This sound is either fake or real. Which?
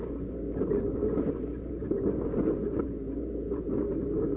real